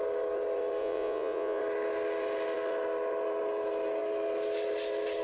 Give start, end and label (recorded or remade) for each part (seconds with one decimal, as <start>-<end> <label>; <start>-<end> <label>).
0.0-0.8 recorded; 0.8-1.6 remade; 1.6-5.2 recorded